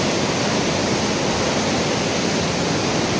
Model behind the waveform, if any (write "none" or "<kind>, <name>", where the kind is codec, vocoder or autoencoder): none